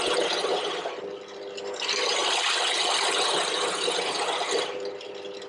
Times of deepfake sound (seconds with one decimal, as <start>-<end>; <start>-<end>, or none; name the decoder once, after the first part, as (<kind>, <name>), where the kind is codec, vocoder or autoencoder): none